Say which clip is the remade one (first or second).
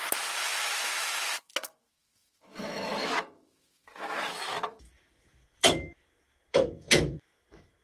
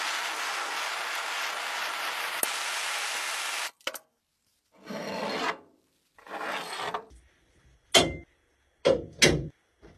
first